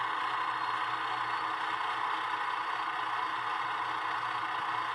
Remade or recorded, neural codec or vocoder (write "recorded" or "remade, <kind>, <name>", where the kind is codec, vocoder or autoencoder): recorded